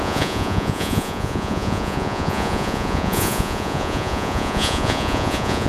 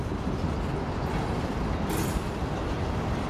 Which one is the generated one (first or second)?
first